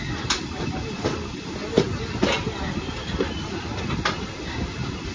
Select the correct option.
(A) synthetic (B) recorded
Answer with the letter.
B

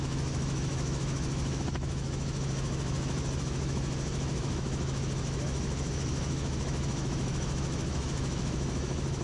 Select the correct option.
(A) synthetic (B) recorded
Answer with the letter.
A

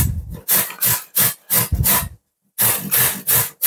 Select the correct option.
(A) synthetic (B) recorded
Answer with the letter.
B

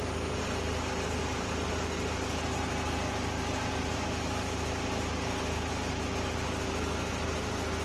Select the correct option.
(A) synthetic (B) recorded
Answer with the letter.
B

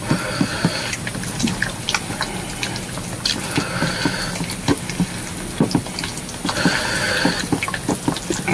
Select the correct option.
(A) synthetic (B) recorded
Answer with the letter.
B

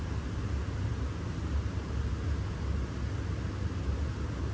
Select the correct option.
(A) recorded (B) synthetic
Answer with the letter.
A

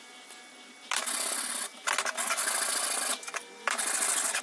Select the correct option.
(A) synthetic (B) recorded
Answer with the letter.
B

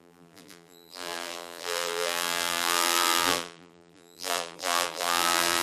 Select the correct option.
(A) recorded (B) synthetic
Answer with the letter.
B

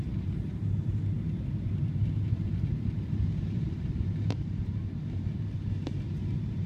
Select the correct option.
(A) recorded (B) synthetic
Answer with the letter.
B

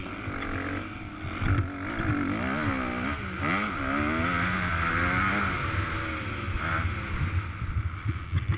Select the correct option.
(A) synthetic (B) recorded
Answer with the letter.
B